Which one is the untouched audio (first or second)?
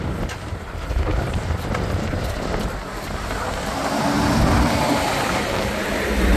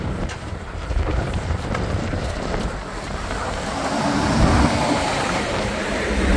first